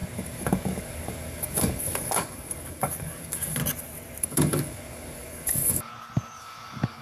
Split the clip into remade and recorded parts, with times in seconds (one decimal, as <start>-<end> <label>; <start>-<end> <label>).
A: 0.0-3.6 remade; 3.6-4.2 recorded; 4.2-5.9 remade; 5.9-6.4 recorded; 6.4-7.0 remade